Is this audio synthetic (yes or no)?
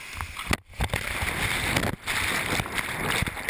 no